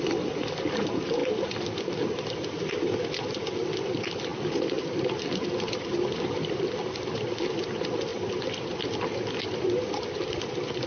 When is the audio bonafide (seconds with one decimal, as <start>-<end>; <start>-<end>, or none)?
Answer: 0.0-4.3; 6.7-8.1; 10.5-10.9